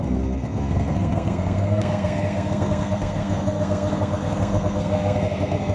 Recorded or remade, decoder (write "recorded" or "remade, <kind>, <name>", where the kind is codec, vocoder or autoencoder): remade, codec, SNAC